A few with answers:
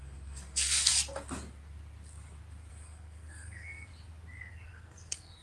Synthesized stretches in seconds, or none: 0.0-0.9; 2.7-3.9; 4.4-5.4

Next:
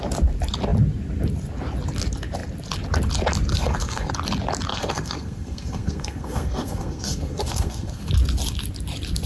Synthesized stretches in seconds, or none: 3.5-4.1; 4.7-8.1

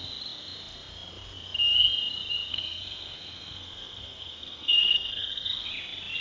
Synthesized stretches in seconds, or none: 2.5-5.7

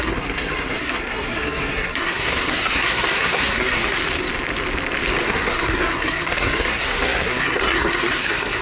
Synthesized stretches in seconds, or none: 0.0-4.0; 5.2-8.6

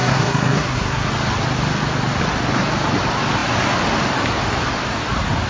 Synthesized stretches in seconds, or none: 0.0-1.1

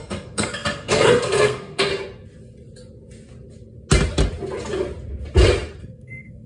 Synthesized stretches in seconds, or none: 0.0-1.9; 5.8-6.5

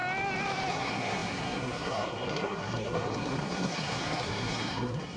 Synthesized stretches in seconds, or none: 0.7-5.2

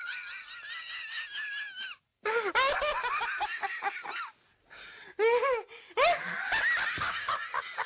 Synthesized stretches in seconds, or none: none